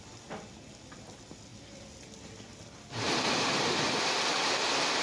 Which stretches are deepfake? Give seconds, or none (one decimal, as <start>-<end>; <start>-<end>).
none